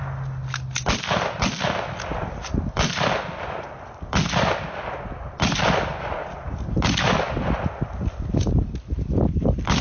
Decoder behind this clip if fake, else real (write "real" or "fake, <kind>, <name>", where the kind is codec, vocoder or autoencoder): real